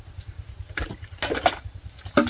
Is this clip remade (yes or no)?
no